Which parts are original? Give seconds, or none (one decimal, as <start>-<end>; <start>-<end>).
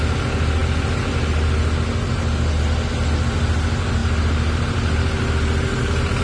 0.0-6.2